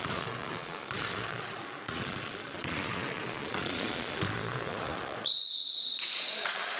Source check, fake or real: fake